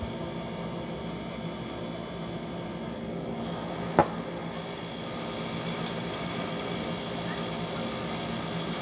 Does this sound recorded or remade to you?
recorded